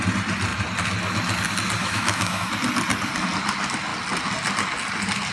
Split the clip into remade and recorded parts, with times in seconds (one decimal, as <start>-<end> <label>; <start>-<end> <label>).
0.0-1.8 recorded; 1.8-2.5 remade; 2.5-5.3 recorded